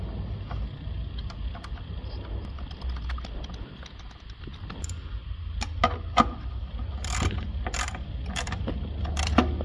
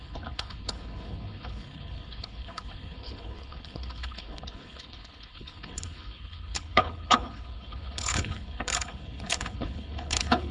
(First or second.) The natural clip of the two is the first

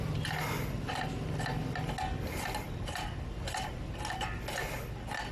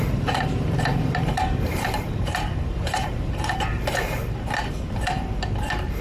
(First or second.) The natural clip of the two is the first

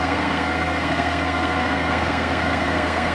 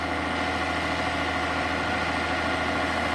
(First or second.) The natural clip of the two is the second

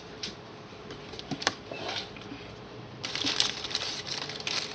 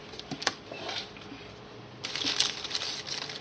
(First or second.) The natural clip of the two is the second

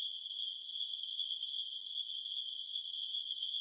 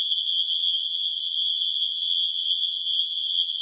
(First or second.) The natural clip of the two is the first